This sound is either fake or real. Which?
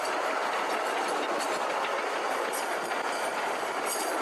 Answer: real